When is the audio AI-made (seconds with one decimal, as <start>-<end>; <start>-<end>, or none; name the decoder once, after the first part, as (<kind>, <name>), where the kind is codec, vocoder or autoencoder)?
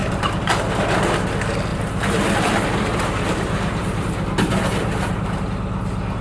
0.0-0.5 (vocoder, BigVGAN v2); 1.7-5.4